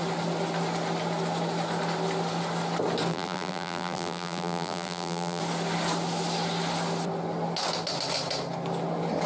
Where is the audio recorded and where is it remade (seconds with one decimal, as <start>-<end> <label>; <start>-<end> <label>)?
0.0-3.1 recorded; 3.1-5.4 remade; 5.4-9.3 recorded